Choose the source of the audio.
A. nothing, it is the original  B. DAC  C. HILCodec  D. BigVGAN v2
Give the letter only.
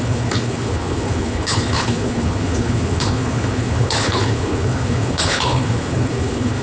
C